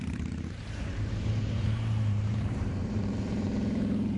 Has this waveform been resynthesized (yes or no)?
yes